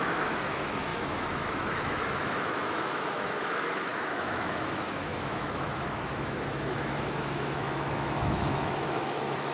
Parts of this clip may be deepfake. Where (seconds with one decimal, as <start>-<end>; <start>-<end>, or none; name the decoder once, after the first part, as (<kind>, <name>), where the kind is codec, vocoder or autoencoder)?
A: 0.0-9.5 (autoencoder, DAC-VAE)

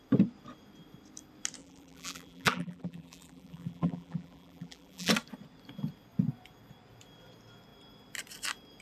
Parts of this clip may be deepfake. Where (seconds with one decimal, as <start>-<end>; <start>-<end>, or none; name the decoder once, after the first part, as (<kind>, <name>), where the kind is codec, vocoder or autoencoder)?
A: 1.6-5.1 (vocoder, BigVGAN v2)

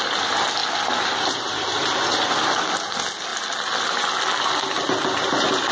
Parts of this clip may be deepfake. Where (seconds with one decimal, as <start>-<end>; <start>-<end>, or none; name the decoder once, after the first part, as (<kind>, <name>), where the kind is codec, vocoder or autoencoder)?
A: none

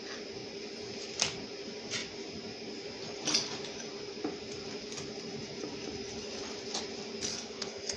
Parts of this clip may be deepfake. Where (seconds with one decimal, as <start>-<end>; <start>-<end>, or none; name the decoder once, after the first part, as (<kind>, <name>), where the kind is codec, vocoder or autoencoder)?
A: 7.3-8.0 (codec, SNAC)